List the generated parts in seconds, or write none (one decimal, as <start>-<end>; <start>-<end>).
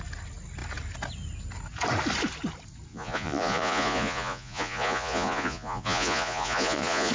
2.9-7.1